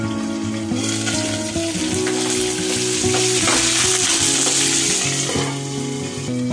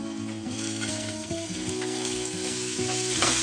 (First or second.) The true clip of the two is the first